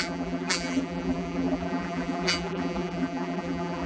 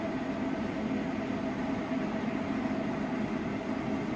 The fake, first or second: first